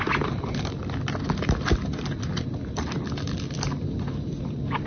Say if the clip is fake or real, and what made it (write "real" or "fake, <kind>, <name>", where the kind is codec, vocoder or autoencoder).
real